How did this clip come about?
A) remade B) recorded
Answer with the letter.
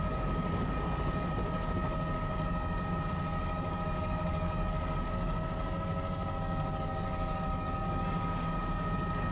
A